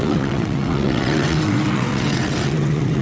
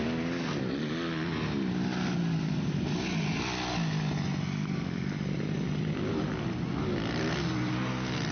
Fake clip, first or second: first